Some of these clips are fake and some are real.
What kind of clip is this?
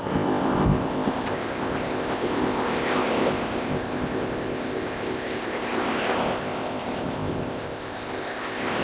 fake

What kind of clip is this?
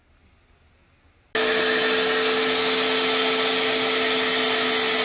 real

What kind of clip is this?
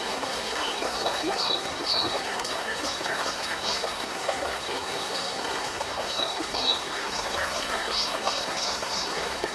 fake